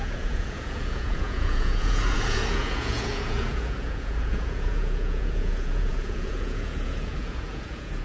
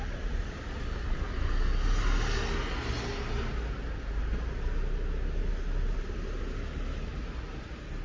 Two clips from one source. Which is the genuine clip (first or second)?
second